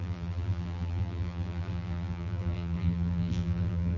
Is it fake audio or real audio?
fake